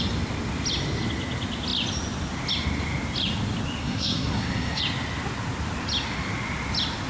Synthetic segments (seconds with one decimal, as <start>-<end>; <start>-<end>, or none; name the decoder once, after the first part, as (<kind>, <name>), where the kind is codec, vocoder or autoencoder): 3.8-4.8 (codec, SNAC)